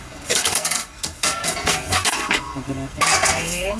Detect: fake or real fake